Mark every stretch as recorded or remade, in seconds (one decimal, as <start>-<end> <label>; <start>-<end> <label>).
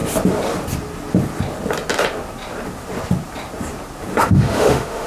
0.0-4.1 recorded; 4.1-5.1 remade